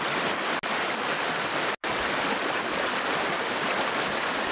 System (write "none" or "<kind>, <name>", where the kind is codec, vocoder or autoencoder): none